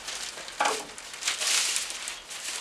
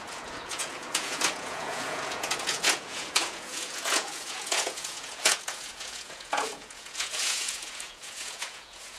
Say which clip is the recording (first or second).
first